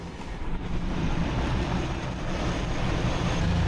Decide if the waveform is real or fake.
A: fake